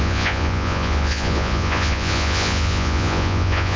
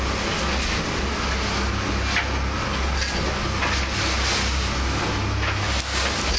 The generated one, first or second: first